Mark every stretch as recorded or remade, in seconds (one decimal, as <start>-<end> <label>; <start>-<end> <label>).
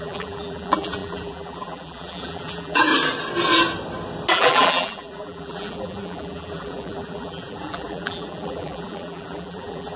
0.0-2.9 remade; 2.9-4.3 recorded; 4.3-10.0 remade